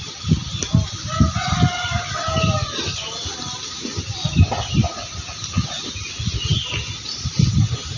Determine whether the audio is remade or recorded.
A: recorded